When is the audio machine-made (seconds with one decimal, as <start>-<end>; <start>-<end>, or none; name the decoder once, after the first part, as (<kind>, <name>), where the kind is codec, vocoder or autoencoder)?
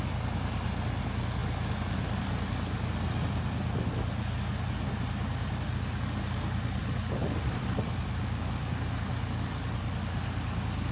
7.2-8.7 (vocoder, BigVGAN v2)